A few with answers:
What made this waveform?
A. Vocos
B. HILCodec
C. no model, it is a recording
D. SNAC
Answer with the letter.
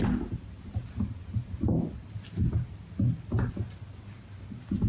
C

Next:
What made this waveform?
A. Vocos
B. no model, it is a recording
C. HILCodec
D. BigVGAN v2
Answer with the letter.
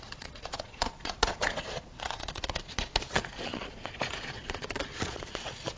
A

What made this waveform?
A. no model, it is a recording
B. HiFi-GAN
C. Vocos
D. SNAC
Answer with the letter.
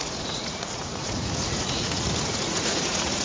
C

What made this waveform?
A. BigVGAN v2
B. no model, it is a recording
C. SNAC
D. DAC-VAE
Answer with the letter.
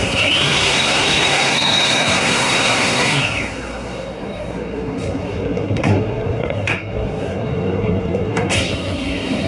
C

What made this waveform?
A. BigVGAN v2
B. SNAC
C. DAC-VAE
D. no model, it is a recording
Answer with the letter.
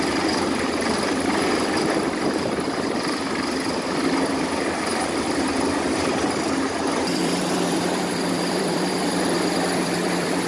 A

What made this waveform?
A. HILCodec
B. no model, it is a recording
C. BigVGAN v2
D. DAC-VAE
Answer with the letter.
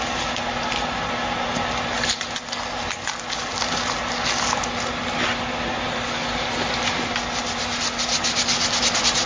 B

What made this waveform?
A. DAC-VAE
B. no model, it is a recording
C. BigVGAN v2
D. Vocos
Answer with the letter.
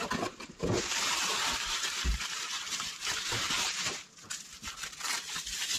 C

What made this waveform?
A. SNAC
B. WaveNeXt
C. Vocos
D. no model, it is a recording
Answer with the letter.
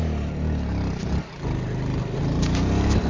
D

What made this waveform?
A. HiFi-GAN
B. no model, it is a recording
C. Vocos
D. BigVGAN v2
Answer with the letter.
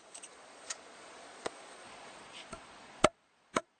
C